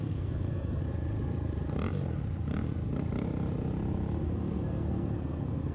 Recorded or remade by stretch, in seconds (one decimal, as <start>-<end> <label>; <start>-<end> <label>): 0.0-0.8 remade; 0.8-4.2 recorded; 4.2-5.7 remade